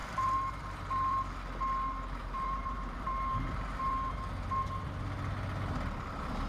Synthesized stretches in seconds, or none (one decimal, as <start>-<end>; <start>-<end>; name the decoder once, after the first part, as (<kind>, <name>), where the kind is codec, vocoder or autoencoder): 0.0-1.3 (vocoder, BigVGAN v2); 2.2-4.2